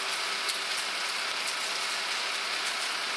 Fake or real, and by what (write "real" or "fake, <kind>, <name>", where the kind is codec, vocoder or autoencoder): real